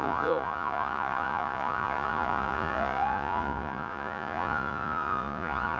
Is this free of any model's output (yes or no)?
no